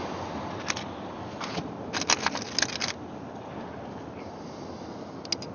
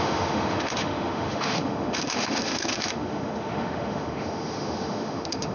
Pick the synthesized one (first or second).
second